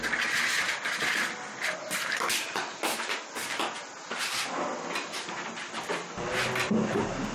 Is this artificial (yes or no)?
no